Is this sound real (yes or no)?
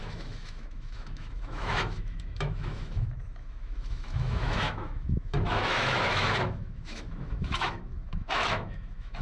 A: no